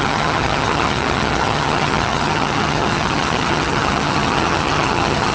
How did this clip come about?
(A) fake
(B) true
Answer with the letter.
A